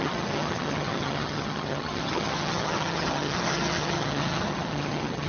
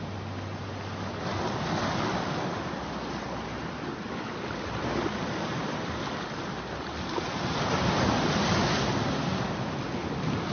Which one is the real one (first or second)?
second